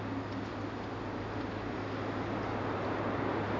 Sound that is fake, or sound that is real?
real